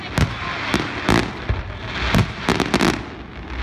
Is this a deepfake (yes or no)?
no